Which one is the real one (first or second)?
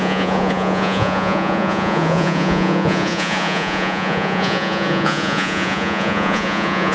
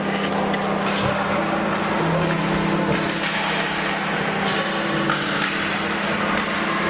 second